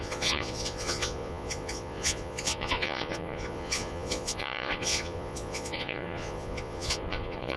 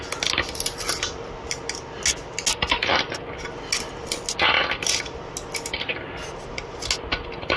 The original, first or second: second